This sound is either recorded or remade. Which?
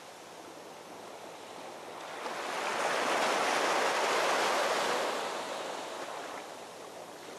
recorded